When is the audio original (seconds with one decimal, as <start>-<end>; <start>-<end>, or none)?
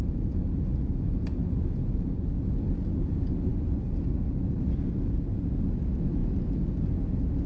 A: 0.0-7.5